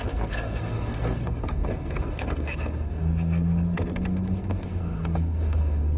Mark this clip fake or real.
fake